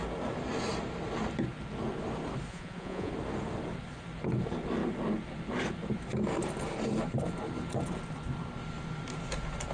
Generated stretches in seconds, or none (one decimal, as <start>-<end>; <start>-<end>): 2.5-3.1